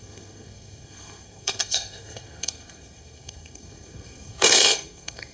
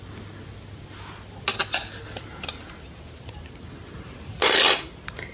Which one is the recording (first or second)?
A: second